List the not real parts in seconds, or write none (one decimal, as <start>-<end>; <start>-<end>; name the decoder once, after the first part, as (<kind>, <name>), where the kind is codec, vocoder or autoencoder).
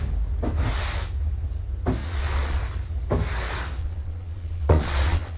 2.0-2.6 (vocoder, Vocos); 3.8-5.4